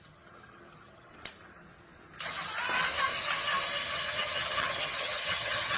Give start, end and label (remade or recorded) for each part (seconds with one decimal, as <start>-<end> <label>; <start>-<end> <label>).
0.0-1.1 remade; 1.1-3.9 recorded; 3.9-5.8 remade